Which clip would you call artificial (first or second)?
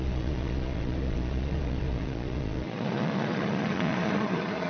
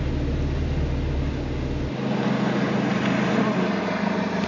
first